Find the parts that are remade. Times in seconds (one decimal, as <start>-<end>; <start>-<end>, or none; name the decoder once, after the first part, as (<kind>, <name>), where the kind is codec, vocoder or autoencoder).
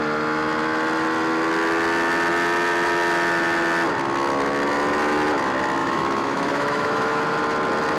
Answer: 5.8-7.2 (autoencoder, DAC-VAE)